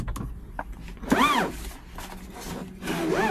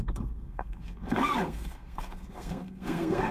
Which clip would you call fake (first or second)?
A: second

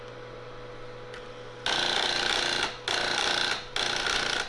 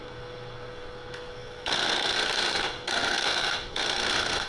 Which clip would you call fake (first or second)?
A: second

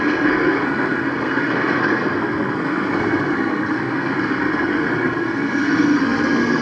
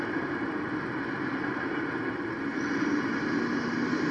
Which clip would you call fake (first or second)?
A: first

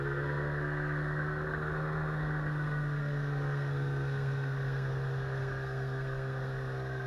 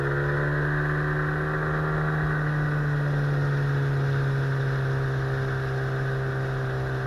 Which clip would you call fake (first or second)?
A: first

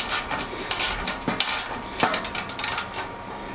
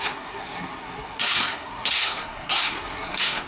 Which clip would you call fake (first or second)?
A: second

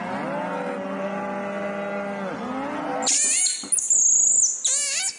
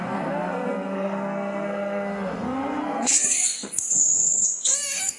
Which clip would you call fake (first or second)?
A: second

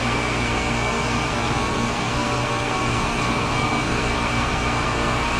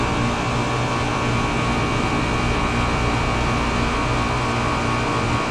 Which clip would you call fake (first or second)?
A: first